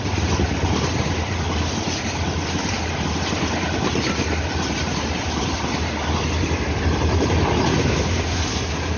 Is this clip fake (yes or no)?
no